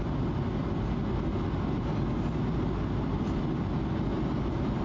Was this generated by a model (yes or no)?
no